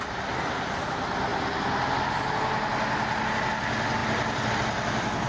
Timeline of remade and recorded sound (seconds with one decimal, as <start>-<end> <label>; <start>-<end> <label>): 0.0-5.3 recorded